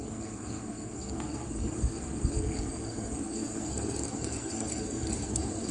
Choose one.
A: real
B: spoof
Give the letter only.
B